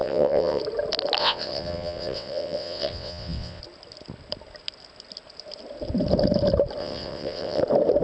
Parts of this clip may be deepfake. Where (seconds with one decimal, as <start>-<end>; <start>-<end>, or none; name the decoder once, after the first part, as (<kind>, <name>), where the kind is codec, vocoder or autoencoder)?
0.0-0.6 (vocoder, WaveNeXt); 1.2-3.6; 6.8-7.6